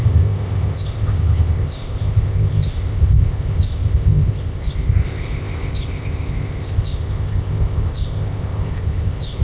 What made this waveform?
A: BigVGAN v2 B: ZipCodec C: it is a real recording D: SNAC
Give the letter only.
B